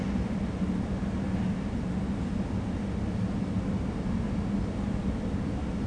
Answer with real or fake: real